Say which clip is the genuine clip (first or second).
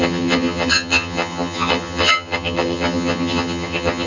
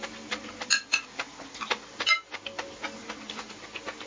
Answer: second